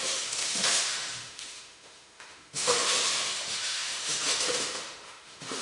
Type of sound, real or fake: fake